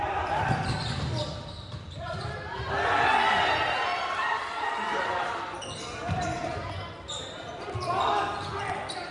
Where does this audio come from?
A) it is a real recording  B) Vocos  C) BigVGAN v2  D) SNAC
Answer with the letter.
C